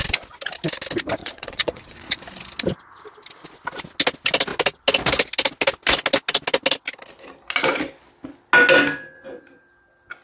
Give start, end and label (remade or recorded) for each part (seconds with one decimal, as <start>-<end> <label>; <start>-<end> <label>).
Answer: 0.0-1.2 recorded; 1.2-2.2 remade; 2.2-10.2 recorded

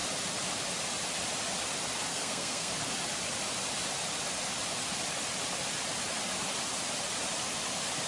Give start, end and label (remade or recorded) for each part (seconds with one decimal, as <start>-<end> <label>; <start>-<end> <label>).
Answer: 0.0-2.1 recorded; 2.1-2.7 remade; 2.7-8.1 recorded

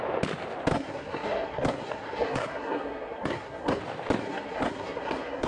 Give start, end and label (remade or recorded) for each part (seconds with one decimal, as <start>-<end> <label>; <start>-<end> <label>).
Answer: 0.0-0.7 recorded; 0.7-3.8 remade; 3.8-4.2 recorded; 4.2-5.5 remade

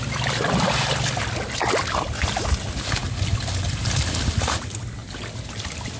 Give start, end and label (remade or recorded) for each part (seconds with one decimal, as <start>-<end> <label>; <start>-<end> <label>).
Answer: 0.0-6.0 recorded

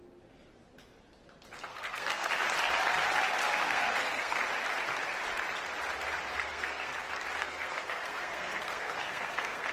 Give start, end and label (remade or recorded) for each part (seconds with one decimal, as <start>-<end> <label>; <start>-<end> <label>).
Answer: 0.0-1.7 recorded; 1.7-2.3 remade; 2.3-3.6 recorded; 3.6-4.4 remade; 4.4-6.3 recorded; 6.3-6.9 remade; 6.9-7.4 recorded; 7.4-9.7 remade